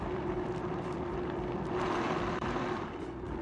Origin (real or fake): real